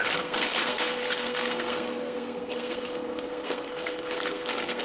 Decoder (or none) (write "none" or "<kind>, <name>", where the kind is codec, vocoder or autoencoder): codec, SNAC